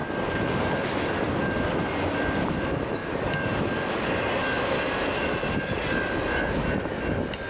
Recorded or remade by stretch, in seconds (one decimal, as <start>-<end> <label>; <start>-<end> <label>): 0.0-7.5 recorded